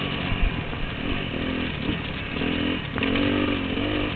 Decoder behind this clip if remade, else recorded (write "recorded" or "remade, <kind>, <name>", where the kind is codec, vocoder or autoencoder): recorded